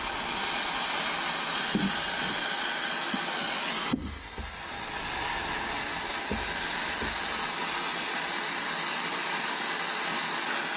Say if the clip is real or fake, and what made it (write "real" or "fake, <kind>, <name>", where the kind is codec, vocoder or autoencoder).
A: real